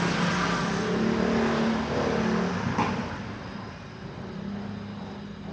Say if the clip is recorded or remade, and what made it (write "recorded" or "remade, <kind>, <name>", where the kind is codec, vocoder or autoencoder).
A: recorded